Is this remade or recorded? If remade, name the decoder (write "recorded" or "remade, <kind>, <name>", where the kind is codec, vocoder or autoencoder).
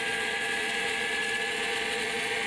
remade, vocoder, Vocos